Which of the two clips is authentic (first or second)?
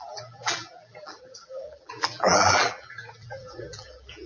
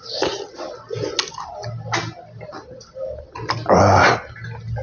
second